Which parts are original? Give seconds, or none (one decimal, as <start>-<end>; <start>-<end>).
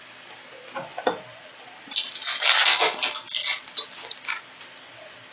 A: 0.0-3.4; 4.4-5.3